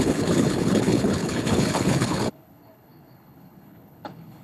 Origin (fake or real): fake